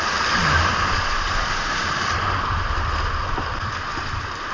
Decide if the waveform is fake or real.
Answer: real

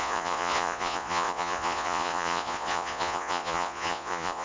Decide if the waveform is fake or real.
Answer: fake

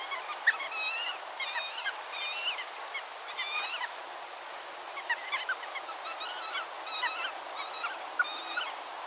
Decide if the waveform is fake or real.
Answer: real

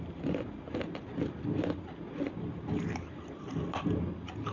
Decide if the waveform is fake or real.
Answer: real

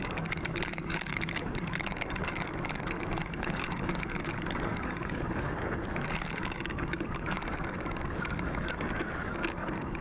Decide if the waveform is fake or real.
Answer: fake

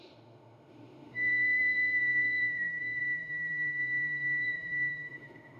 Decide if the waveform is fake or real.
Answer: fake